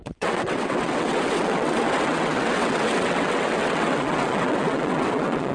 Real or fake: fake